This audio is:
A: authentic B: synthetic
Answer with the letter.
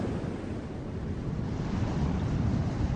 A